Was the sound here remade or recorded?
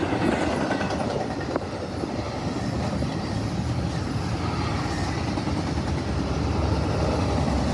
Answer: recorded